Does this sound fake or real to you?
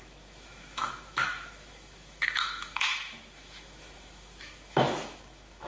fake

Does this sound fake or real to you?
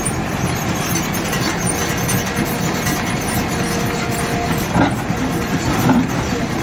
real